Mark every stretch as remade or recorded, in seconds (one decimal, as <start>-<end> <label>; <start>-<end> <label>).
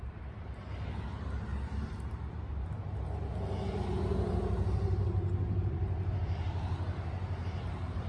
0.0-8.1 remade